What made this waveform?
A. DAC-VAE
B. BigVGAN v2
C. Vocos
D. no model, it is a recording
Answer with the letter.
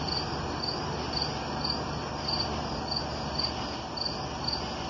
D